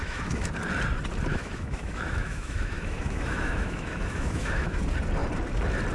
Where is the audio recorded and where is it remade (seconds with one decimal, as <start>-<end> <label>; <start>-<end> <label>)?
0.0-0.5 remade; 0.5-1.3 recorded; 1.3-4.8 remade; 4.8-5.9 recorded

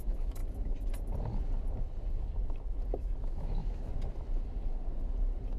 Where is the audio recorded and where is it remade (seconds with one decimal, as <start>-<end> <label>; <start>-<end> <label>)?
0.0-0.4 remade; 0.4-3.2 recorded; 3.2-3.9 remade; 3.9-5.6 recorded

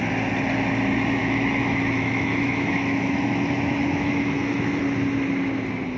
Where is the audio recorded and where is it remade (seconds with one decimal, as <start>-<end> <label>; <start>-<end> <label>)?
0.0-1.2 recorded; 1.2-4.8 remade; 4.8-6.0 recorded

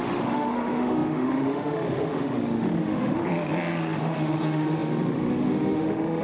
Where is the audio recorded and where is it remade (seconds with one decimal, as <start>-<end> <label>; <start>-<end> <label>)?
0.0-3.2 remade; 3.2-4.0 recorded; 4.0-6.2 remade

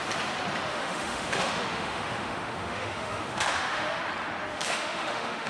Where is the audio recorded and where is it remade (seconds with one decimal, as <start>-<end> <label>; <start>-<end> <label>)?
0.0-0.7 recorded; 0.7-4.0 remade; 4.0-4.5 recorded; 4.5-5.5 remade

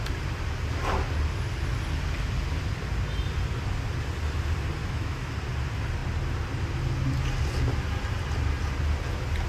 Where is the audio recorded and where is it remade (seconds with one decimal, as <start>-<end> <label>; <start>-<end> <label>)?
0.0-4.8 recorded; 4.8-5.3 remade; 5.3-9.5 recorded